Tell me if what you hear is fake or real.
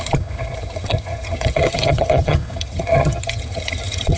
fake